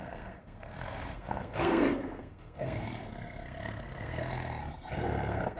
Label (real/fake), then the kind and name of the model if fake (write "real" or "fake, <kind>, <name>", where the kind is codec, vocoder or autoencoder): fake, codec, SNAC